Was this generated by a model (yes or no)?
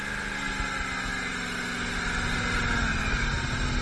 no